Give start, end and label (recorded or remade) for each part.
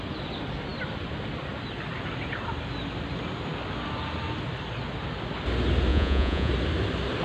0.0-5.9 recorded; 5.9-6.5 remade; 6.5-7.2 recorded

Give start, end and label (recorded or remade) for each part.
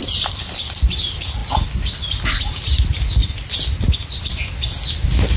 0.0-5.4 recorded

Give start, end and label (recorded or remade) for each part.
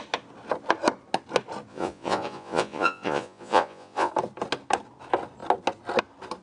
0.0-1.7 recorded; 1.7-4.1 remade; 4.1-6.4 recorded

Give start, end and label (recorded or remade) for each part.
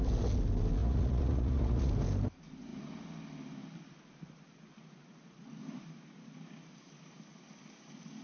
0.0-0.8 recorded; 0.8-1.9 remade; 1.9-8.2 recorded